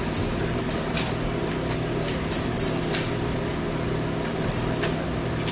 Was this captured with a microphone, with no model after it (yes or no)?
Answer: yes